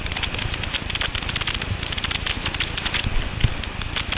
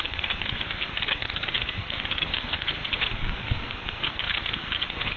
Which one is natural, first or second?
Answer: first